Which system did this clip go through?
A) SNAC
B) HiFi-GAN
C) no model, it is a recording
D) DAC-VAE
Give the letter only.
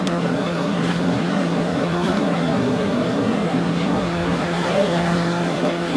A